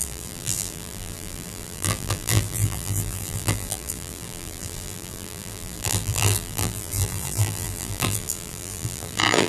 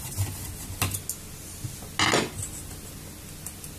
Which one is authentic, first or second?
second